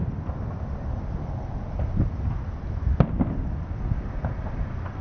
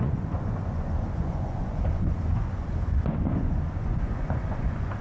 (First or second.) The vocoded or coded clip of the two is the second